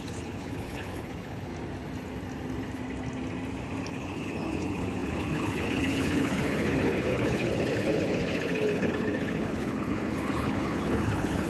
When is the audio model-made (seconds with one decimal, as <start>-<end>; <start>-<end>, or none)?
0.0-1.5; 3.9-11.5